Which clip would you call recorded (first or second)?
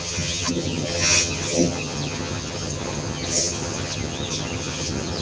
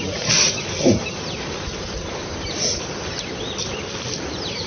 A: second